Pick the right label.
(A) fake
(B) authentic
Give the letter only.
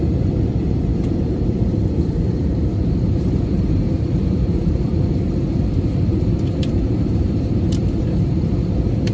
A